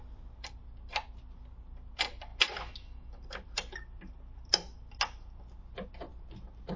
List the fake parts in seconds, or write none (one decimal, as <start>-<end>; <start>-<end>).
none